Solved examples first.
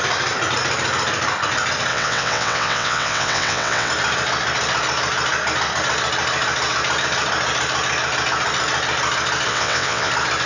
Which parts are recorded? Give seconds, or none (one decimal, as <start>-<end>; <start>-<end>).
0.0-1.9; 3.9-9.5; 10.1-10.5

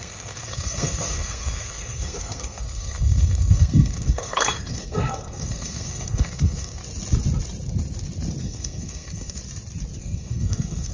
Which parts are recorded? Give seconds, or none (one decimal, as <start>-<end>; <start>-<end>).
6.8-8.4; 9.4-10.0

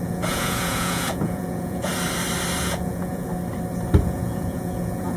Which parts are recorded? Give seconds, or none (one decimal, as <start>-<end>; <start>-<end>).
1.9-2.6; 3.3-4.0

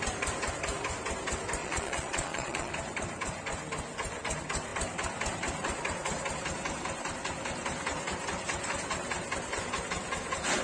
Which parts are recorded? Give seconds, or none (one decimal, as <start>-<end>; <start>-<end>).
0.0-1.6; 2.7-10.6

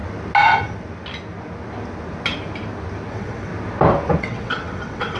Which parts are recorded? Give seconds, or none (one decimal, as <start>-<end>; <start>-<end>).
0.0-3.1; 3.5-4.2

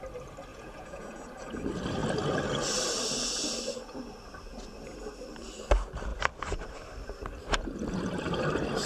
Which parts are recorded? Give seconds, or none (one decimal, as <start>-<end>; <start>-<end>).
0.0-0.5; 1.3-8.9

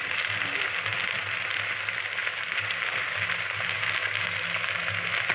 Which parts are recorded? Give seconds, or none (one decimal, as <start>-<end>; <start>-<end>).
0.0-0.9; 1.7-5.3